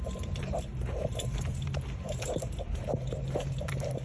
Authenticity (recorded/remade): remade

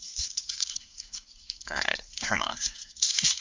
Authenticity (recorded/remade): remade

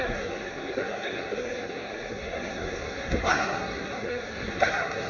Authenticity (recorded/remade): remade